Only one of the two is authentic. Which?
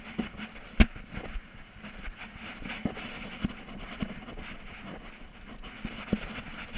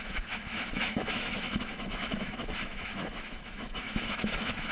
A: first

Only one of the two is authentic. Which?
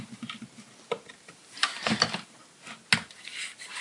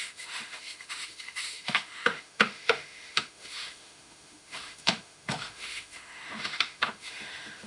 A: first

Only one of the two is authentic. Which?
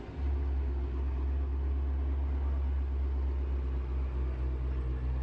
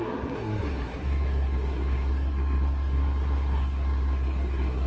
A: first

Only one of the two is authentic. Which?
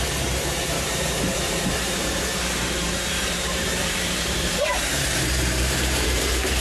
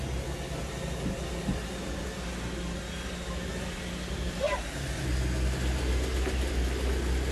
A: second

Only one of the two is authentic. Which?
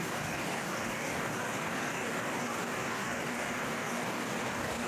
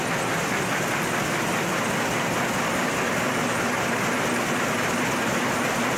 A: second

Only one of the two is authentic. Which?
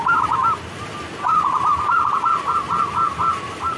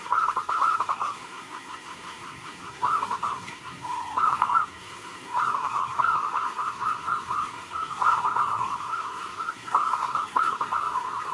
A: first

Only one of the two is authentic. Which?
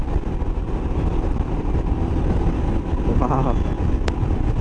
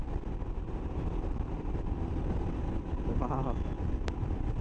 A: first